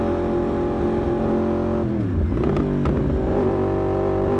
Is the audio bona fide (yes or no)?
yes